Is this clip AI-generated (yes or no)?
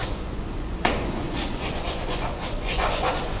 yes